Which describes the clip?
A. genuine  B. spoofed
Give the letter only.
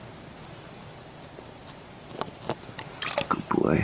A